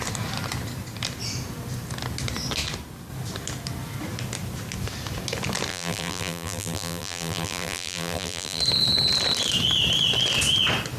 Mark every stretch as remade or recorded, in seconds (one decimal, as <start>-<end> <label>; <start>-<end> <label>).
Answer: 0.0-5.7 recorded; 5.7-8.6 remade; 8.6-11.0 recorded